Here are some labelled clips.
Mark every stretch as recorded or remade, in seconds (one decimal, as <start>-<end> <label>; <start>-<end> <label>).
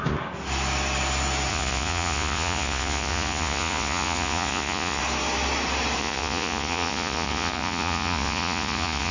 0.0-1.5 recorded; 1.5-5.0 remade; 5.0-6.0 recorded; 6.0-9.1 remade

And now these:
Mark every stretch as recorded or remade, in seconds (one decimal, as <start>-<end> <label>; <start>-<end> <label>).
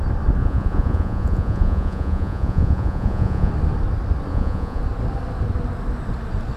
0.0-0.4 recorded; 0.4-3.5 remade; 3.5-4.3 recorded; 4.3-4.8 remade; 4.8-6.6 recorded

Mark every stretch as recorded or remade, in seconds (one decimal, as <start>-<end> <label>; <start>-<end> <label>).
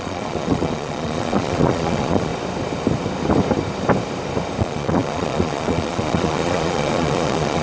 0.0-2.3 remade; 2.3-4.6 recorded; 4.6-7.6 remade